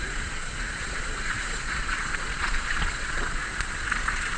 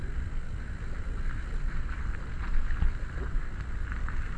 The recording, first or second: second